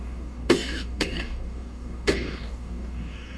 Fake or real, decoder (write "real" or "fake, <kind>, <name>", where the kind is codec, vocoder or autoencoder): fake, codec, DAC